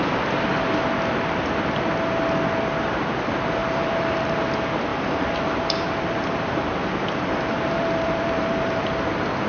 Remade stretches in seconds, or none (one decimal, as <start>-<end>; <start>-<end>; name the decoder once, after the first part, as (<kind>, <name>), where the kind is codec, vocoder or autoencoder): 3.6-4.4 (vocoder, BigVGAN v2); 4.9-8.8